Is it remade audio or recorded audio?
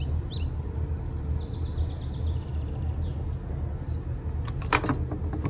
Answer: recorded